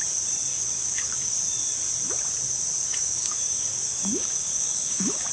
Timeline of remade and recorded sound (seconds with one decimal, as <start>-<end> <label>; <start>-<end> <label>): 0.0-0.5 recorded; 0.5-1.5 remade; 1.5-2.9 recorded; 2.9-5.3 remade